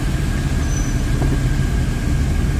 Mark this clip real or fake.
real